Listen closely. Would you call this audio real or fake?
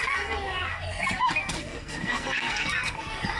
fake